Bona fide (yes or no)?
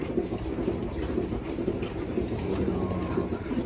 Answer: no